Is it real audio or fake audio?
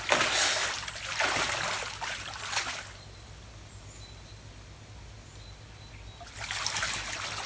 real